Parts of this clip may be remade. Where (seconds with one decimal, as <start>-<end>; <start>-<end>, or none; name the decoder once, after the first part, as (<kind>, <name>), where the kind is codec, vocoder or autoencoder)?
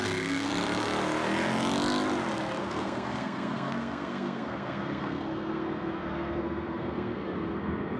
0.0-0.5 (codec, SNAC); 2.6-8.0